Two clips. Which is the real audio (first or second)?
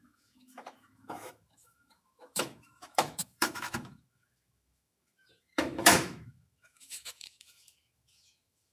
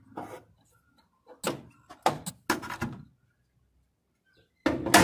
second